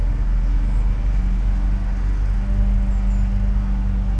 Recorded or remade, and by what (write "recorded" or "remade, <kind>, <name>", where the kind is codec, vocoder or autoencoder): recorded